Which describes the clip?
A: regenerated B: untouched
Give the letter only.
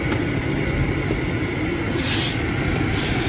B